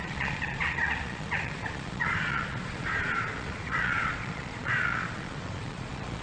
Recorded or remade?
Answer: remade